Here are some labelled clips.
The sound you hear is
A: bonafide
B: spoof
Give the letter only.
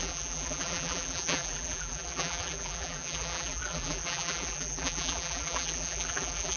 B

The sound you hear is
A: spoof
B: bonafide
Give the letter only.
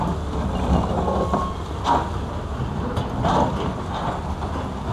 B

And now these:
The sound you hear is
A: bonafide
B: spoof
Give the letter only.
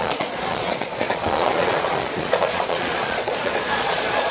B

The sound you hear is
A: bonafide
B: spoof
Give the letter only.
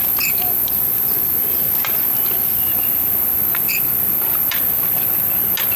A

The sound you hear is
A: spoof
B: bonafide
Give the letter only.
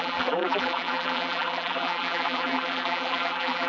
A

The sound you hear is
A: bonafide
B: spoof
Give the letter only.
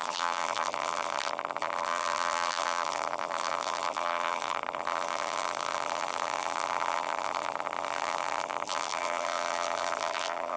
B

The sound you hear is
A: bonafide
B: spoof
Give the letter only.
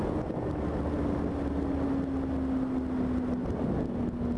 A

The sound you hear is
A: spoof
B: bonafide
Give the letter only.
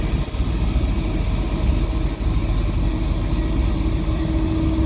B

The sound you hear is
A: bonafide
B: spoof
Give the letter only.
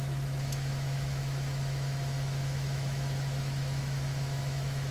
B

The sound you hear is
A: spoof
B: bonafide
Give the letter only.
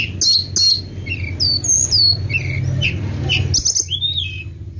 B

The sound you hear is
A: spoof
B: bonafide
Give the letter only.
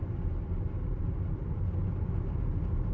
A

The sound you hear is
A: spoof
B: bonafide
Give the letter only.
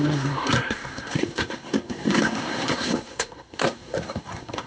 A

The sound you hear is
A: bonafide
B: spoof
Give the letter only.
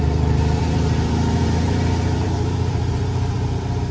B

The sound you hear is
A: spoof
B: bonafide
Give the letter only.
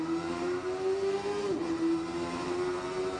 A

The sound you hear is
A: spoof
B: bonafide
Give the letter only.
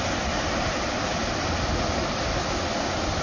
B